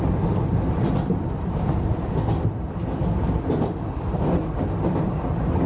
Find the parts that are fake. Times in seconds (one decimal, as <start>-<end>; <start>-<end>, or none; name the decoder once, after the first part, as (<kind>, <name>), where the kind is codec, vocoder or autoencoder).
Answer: none